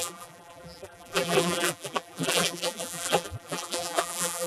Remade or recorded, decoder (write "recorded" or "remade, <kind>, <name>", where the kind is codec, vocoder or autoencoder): remade, vocoder, BigVGAN v2